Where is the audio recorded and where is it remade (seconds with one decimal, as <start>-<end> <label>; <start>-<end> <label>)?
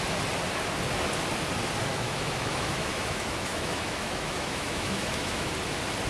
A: 0.0-1.9 recorded; 1.9-5.5 remade; 5.5-6.1 recorded